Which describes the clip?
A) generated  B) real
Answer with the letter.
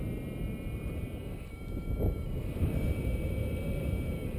A